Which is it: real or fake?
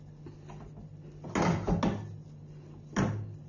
real